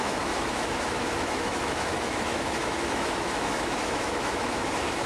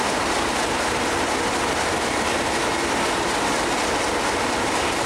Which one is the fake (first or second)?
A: first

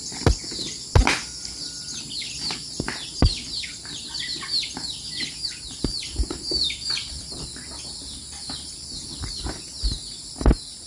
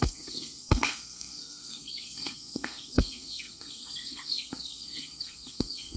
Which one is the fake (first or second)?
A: second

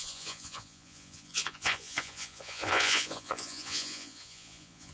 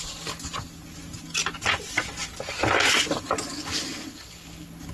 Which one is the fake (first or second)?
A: first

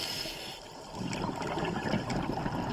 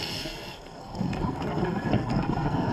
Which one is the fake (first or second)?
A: second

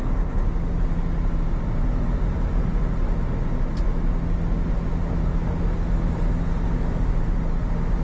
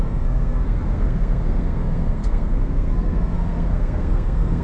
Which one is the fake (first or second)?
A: second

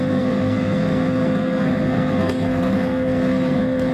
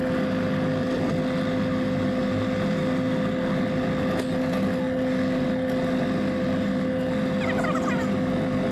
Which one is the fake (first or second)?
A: first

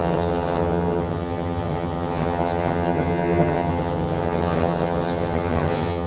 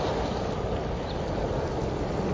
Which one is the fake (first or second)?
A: first